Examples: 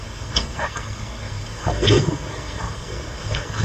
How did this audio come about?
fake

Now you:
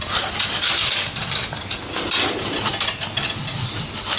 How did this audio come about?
real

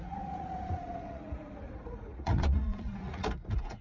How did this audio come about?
fake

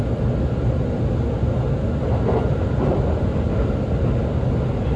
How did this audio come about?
real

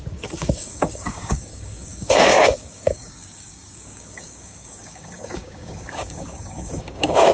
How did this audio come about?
fake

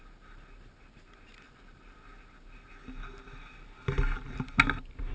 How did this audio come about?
real